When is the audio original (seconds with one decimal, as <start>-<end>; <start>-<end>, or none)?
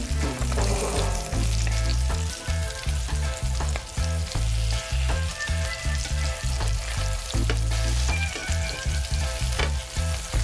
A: 0.0-8.4; 9.2-10.4